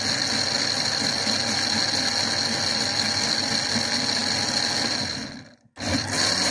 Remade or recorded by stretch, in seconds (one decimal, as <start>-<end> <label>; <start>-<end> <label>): 0.0-6.5 recorded